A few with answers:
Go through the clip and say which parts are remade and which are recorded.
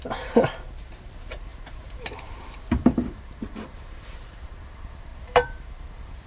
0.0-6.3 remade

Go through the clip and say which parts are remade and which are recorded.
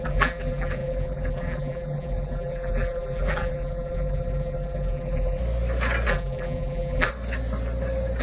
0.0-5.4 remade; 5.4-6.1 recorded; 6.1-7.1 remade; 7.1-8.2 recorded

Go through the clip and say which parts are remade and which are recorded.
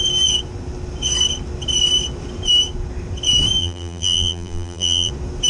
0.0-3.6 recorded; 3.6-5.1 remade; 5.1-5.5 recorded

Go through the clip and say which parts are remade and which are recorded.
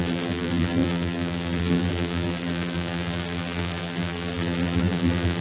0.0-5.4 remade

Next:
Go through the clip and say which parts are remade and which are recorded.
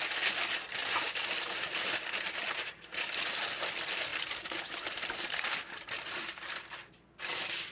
0.0-0.8 recorded; 0.8-3.2 remade; 3.2-4.1 recorded; 4.1-6.5 remade; 6.5-7.7 recorded